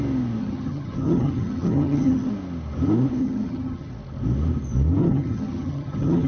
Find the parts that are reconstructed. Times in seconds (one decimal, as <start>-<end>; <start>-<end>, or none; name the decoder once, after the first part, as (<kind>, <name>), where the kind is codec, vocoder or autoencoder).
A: 0.4-2.3 (vocoder, HiFi-GAN); 3.2-3.9; 5.0-6.3